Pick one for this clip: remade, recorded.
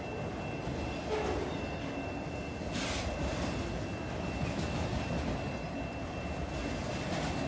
recorded